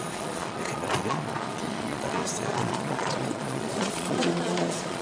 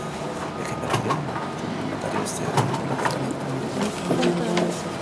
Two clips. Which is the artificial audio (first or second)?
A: first